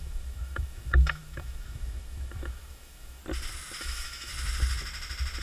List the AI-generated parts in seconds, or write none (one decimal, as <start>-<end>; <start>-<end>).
0.0-3.2; 3.8-4.3